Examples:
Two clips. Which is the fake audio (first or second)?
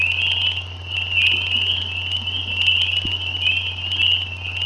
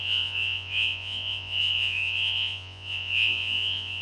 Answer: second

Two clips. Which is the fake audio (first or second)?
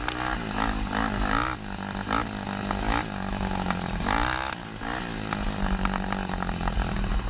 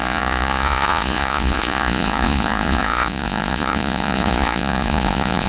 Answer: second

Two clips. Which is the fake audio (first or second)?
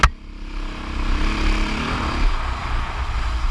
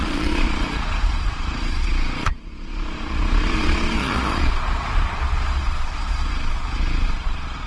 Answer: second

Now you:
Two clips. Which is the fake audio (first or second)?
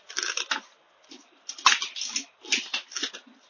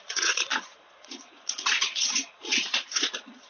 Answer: second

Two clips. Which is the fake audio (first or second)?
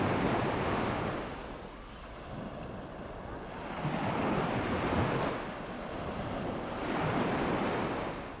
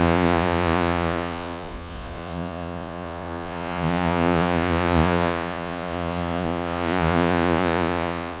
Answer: second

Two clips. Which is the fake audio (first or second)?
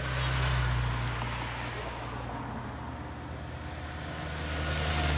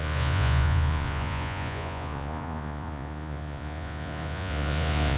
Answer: second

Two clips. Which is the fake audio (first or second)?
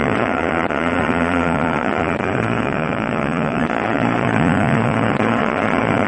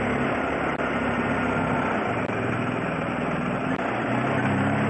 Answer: first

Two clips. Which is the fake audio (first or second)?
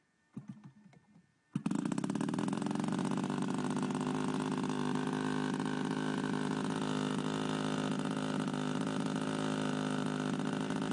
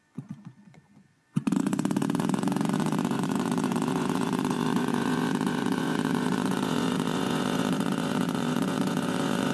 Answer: second